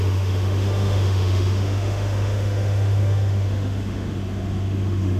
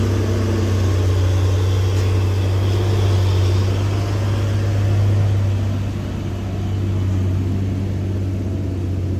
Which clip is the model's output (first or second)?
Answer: first